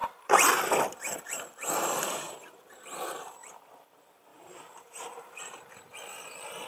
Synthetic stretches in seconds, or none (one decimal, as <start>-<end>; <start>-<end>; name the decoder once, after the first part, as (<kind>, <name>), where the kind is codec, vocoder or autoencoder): 0.0-0.6 (vocoder, BigVGAN v2); 4.3-5.4